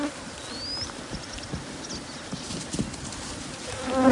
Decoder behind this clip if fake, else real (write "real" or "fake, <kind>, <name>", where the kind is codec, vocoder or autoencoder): real